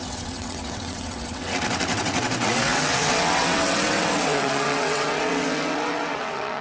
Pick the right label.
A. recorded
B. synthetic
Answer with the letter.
B